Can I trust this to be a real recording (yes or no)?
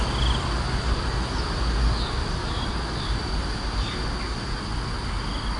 yes